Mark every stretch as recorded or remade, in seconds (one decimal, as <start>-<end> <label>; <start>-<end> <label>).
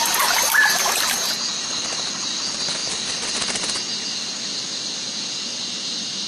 0.0-6.3 recorded